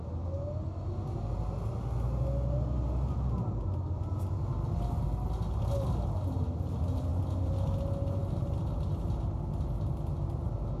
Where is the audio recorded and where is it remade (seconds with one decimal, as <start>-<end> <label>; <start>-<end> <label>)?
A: 0.0-10.8 recorded